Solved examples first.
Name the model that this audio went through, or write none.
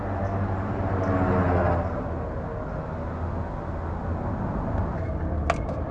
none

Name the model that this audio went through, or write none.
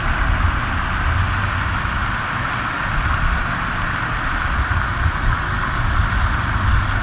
none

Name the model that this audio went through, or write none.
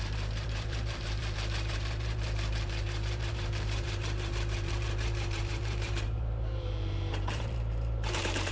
vocoder, BigVGAN v2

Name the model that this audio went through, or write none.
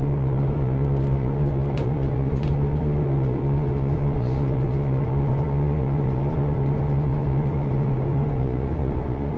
vocoder, Vocos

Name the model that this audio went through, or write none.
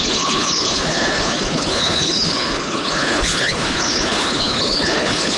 codec, HILCodec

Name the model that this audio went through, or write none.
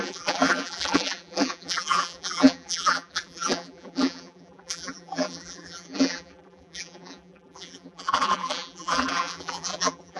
vocoder, BigVGAN v2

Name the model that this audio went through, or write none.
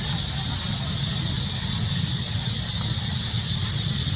none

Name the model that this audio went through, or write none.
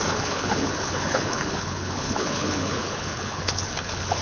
codec, HILCodec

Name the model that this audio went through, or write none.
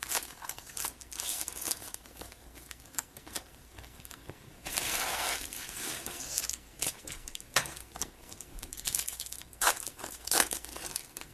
codec, SNAC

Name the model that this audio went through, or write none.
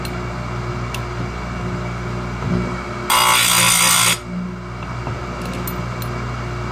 none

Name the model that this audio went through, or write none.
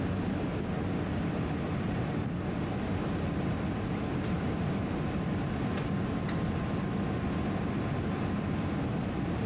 none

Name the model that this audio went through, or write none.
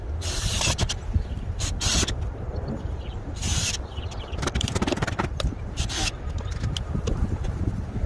vocoder, BigVGAN v2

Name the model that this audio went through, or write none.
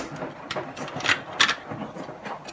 none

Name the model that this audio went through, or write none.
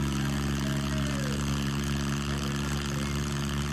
none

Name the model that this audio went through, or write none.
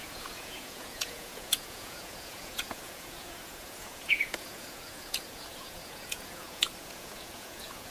vocoder, Vocos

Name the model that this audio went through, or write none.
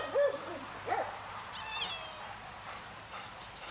vocoder, BigVGAN v2